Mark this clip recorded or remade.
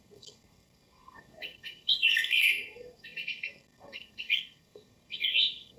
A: remade